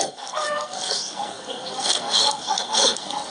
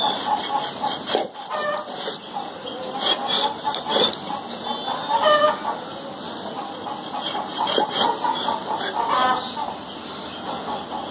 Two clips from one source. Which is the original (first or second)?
second